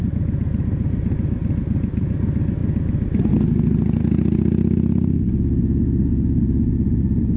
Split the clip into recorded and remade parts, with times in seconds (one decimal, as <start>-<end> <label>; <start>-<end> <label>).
0.0-7.4 recorded